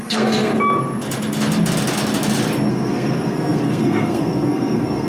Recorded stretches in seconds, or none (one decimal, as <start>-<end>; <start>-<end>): 0.5-2.7